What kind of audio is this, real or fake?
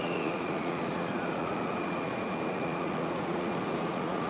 fake